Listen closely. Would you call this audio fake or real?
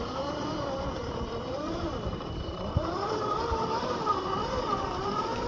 fake